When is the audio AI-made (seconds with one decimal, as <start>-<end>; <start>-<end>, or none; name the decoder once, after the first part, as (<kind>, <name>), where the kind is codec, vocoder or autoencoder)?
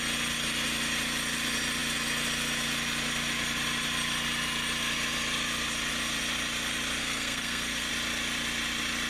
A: 7.0-7.9 (codec, SNAC)